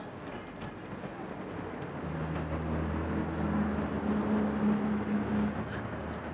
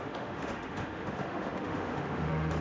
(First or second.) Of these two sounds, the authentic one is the first